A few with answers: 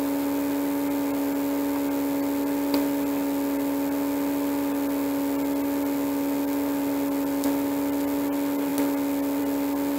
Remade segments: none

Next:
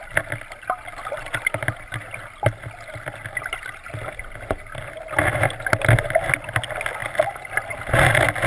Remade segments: none

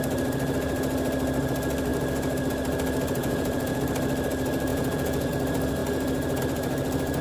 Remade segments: 3.2-3.8; 4.7-5.3

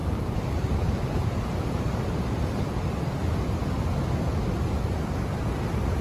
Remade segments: 0.0-2.4